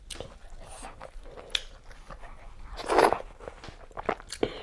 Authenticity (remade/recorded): recorded